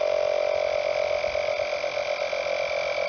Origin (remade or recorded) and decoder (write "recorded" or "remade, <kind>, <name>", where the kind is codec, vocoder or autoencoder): recorded